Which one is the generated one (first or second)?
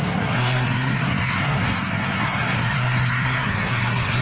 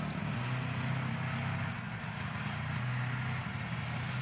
first